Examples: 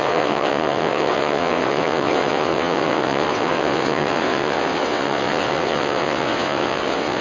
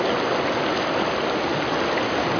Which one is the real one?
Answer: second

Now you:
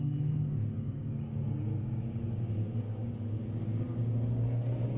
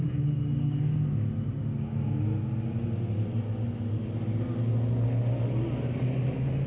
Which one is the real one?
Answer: second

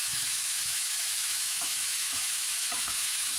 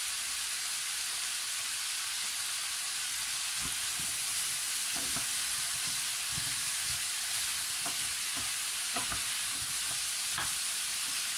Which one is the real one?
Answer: second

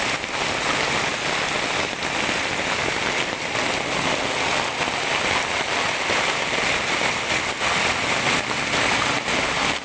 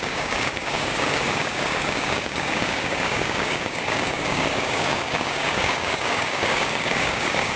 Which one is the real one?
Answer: first